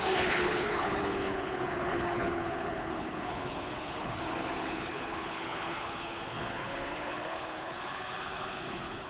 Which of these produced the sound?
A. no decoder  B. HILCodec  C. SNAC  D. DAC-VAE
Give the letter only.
B